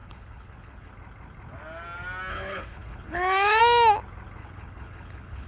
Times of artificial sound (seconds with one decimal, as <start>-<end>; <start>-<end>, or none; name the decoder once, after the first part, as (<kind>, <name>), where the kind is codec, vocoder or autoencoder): 0.0-0.9 (codec, HILCodec); 2.3-3.6; 4.4-5.5